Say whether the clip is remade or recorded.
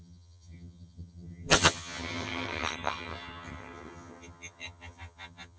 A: remade